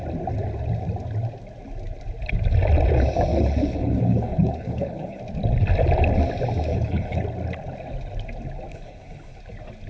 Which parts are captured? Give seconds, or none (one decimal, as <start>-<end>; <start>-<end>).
0.0-3.3; 5.2-6.7; 7.2-8.7; 9.4-9.9